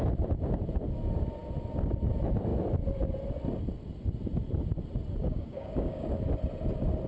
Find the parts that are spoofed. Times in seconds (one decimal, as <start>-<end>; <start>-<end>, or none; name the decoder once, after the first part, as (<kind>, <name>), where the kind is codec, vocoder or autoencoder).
5.2-6.2 (codec, DAC)